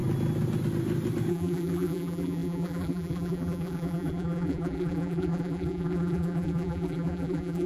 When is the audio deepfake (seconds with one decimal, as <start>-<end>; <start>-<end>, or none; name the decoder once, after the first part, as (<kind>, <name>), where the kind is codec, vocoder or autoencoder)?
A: 1.3-7.7 (vocoder, BigVGAN v2)